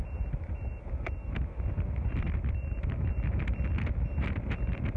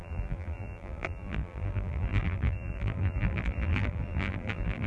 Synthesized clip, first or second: second